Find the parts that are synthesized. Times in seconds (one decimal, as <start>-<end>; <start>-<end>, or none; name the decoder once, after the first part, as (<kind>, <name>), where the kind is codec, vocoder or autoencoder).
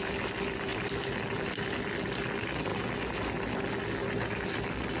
none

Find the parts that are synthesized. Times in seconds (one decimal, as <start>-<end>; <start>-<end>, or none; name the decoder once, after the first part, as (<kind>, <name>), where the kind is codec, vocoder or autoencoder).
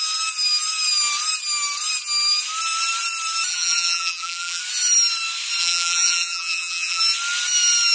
3.5-4.6 (vocoder, BigVGAN v2); 5.6-7.0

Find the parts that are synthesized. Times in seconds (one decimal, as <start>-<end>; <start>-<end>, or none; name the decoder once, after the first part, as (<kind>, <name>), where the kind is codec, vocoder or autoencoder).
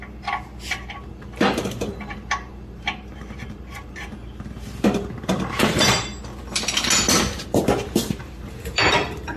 0.0-0.5 (vocoder, BigVGAN v2); 1.1-6.1; 7.6-9.4